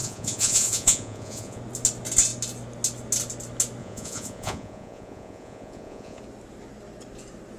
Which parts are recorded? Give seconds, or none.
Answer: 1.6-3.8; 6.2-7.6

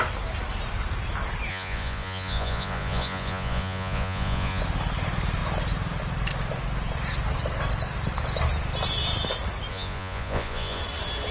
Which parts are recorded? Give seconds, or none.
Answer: 0.0-1.5; 4.6-9.7; 10.8-11.3

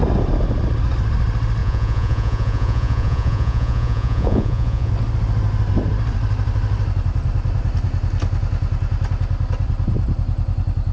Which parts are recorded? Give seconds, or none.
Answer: 0.0-1.6; 4.9-10.9

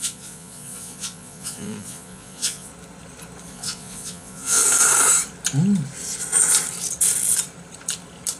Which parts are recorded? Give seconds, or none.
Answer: 2.7-3.5; 4.6-8.4

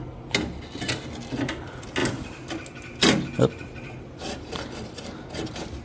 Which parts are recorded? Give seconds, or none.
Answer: 0.0-5.8

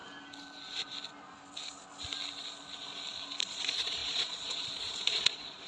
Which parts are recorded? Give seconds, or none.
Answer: 0.0-3.4

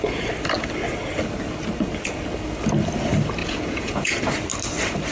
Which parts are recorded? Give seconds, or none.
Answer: 0.0-3.4; 4.2-5.1